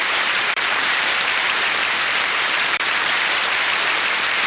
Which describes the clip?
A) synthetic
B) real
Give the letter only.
A